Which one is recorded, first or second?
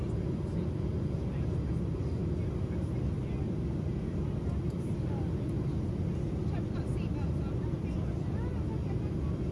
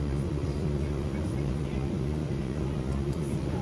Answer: first